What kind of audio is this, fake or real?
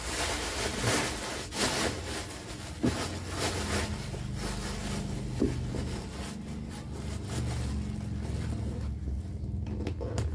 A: real